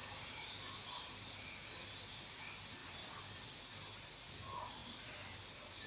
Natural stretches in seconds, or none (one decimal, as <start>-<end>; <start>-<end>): 0.5-2.8; 3.6-4.8